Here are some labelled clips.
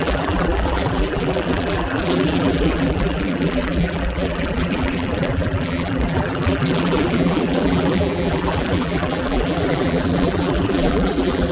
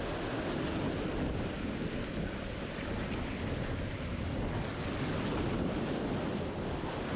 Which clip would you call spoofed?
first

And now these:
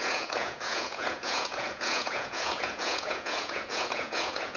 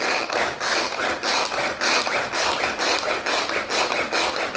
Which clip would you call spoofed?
first